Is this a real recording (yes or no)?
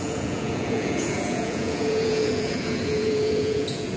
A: no